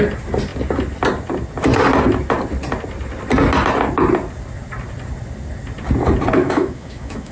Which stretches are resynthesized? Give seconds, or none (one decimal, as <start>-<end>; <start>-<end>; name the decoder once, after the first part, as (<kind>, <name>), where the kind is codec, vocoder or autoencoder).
6.4-7.3 (autoencoder, DAC-VAE)